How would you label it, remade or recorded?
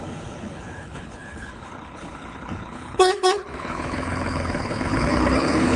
remade